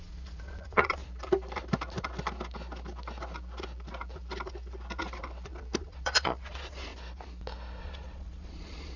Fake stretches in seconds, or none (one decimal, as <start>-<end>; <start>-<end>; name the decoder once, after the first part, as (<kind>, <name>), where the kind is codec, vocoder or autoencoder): 0.0-1.0 (vocoder, Vocos); 5.8-6.9; 7.8-9.0